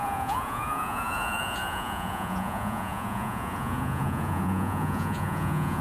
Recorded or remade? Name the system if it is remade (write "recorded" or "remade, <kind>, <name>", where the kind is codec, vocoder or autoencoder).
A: remade, vocoder, Vocos